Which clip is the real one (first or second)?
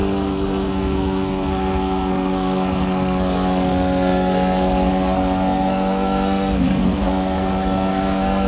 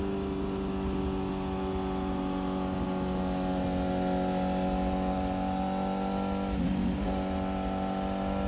second